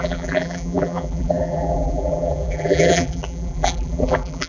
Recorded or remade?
remade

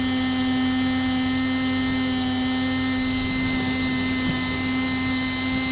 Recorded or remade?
recorded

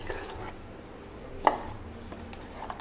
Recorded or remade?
recorded